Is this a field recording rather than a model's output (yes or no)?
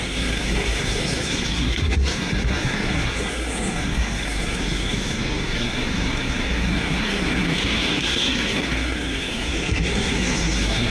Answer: no